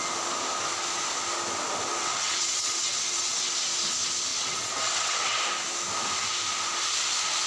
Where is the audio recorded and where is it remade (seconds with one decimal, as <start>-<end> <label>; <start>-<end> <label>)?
0.0-2.0 recorded; 2.0-3.5 remade; 3.5-4.3 recorded; 4.3-5.4 remade; 5.4-7.5 recorded